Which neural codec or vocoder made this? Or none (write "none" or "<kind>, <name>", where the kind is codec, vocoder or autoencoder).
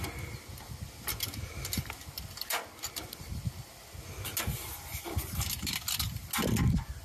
none